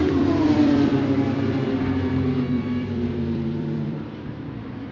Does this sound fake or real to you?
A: fake